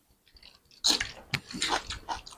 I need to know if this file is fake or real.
real